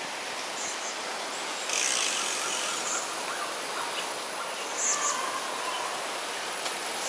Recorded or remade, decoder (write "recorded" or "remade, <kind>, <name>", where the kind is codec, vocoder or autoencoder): recorded